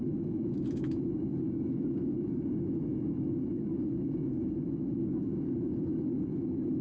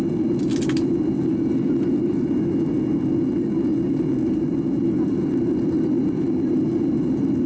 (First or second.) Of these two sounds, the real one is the second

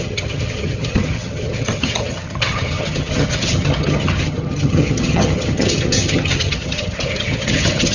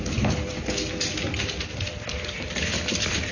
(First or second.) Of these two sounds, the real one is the second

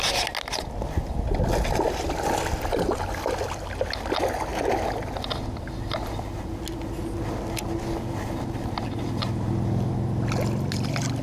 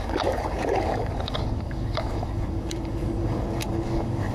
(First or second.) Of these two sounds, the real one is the first